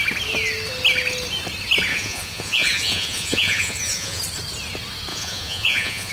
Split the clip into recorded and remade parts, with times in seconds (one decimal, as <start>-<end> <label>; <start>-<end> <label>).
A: 0.0-1.9 recorded; 1.9-4.2 remade; 4.2-5.1 recorded; 5.1-6.1 remade